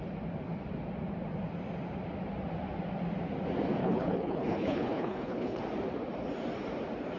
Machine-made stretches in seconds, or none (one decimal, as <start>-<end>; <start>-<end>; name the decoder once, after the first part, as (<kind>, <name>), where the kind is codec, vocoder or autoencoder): 3.8-5.6 (codec, HILCodec)